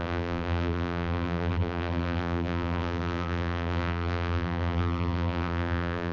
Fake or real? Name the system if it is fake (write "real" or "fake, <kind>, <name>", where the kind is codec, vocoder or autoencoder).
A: fake, vocoder, BigVGAN v2